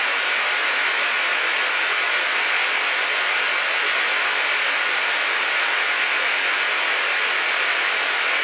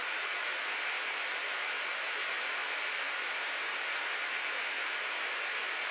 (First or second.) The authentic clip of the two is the first